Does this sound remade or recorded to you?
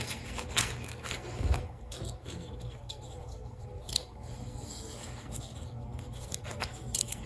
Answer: remade